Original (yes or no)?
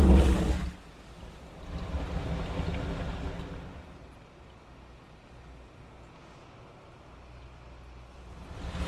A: yes